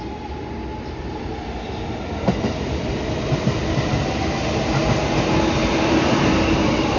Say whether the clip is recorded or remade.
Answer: recorded